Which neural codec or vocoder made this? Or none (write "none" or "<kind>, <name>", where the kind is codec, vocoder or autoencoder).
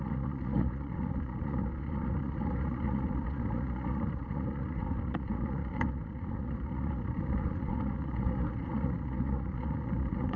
vocoder, Vocos